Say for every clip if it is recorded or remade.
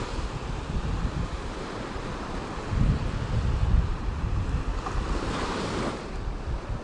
recorded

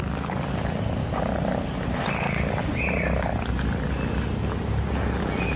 recorded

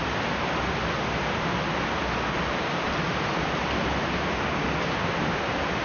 recorded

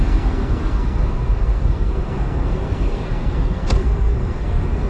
remade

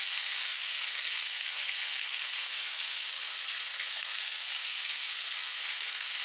remade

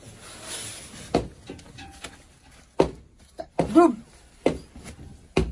recorded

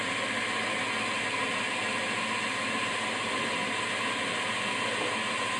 recorded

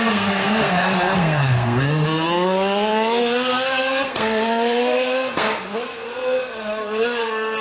remade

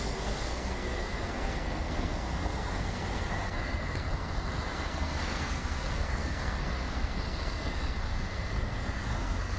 remade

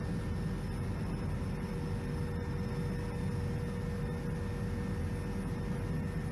recorded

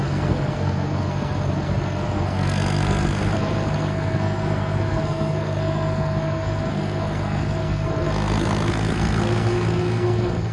remade